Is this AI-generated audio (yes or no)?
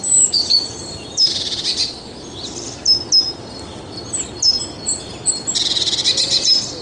no